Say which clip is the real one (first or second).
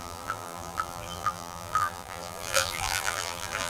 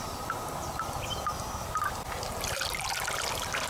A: second